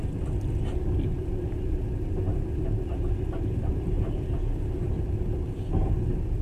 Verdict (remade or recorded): recorded